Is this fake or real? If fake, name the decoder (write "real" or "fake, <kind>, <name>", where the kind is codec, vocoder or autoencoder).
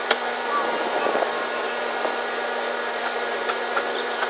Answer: real